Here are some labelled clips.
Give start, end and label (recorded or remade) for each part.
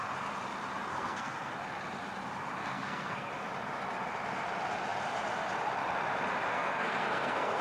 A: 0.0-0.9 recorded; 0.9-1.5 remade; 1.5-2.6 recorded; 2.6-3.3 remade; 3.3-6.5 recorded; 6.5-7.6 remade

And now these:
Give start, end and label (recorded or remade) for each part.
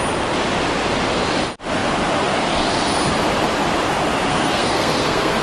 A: 0.0-4.3 recorded; 4.3-5.4 remade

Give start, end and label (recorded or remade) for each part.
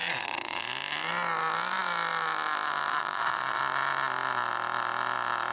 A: 0.0-0.6 remade; 0.6-2.9 recorded; 2.9-3.6 remade; 3.6-5.5 recorded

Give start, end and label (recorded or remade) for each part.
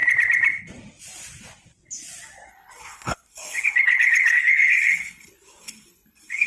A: 0.0-2.5 recorded; 2.5-6.5 remade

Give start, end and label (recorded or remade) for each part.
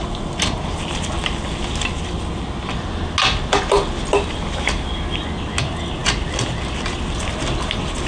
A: 0.0-8.1 recorded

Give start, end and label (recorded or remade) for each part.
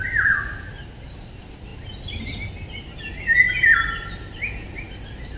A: 0.0-5.4 recorded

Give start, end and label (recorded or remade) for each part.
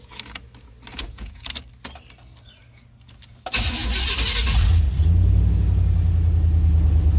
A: 0.0-0.9 recorded; 0.9-1.5 remade; 1.5-7.2 recorded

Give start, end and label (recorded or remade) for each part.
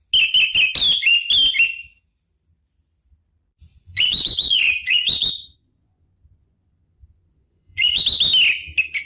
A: 0.0-3.7 recorded; 3.7-8.0 remade; 8.0-9.1 recorded